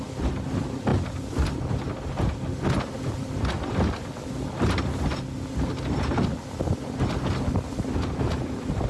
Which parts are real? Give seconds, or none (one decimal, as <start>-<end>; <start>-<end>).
0.0-8.9